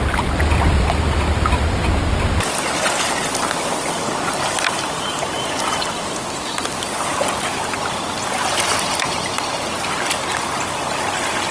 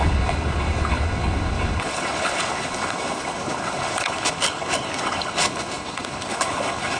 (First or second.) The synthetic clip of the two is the second